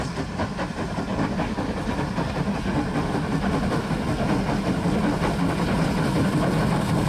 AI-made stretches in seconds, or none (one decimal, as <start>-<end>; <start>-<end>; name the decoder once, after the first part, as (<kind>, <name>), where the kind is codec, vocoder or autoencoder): none